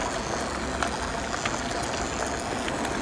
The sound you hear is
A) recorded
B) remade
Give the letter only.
A